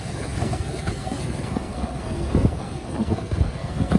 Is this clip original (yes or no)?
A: no